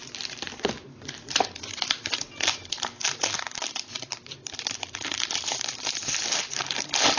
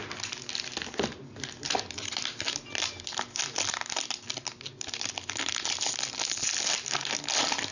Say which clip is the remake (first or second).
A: first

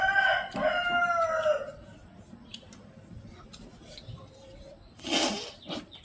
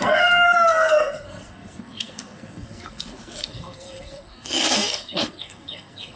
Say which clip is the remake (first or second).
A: second